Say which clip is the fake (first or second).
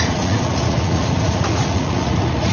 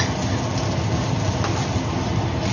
first